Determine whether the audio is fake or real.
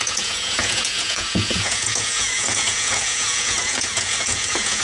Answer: fake